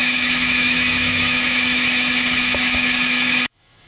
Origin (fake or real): fake